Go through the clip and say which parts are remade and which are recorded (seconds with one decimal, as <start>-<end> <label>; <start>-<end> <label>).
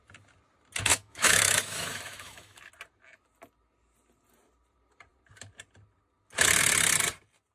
0.0-0.9 recorded; 0.9-2.6 remade; 2.6-7.5 recorded